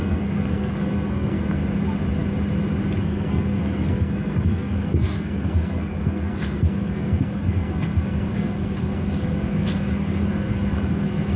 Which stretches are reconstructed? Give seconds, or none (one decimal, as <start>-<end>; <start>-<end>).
0.0-1.6; 3.0-11.4